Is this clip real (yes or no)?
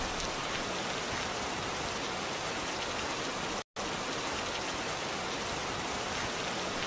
yes